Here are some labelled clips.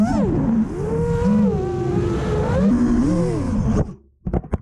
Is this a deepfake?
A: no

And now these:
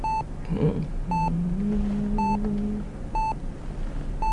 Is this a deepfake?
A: no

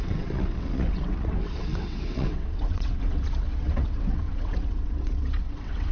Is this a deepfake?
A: yes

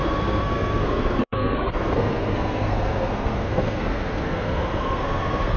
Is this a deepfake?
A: yes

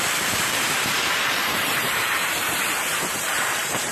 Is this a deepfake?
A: yes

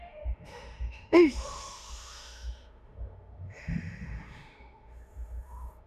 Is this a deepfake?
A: yes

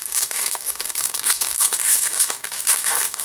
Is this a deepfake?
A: yes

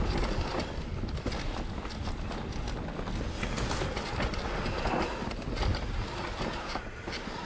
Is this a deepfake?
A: no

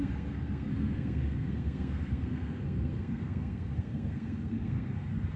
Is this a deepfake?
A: yes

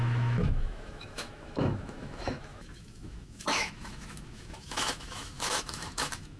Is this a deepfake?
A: yes